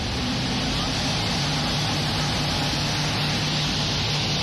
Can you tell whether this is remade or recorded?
recorded